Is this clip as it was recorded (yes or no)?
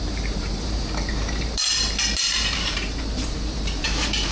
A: no